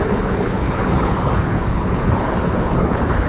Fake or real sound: fake